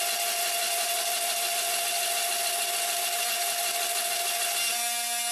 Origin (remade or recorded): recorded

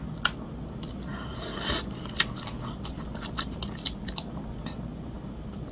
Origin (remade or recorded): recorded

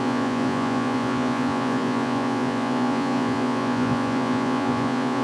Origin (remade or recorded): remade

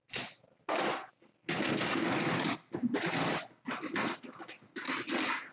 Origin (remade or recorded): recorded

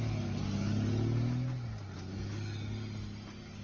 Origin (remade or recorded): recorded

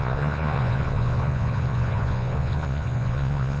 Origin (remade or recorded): remade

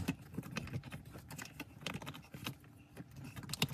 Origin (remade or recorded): recorded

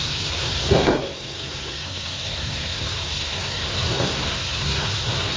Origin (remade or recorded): remade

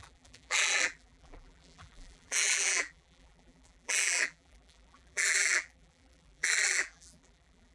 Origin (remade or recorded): remade